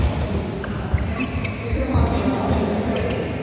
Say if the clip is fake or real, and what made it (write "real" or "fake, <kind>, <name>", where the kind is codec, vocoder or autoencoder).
real